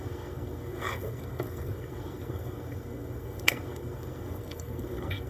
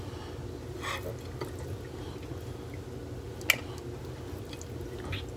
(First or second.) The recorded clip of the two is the second